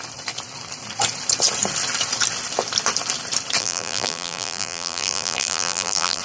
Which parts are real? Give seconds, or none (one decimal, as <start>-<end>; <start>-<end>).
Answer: 0.0-3.6